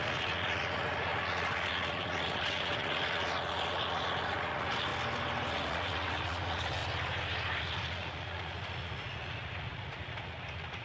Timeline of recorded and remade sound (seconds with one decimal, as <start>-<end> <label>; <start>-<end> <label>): 0.0-4.9 remade; 4.9-5.5 recorded; 5.5-6.8 remade; 6.8-7.6 recorded; 7.6-10.8 remade